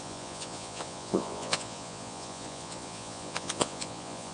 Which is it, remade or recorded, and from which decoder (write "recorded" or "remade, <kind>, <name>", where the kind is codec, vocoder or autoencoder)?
remade, vocoder, Vocos